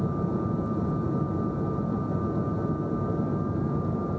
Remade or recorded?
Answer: recorded